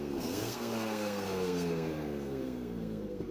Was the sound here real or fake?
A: fake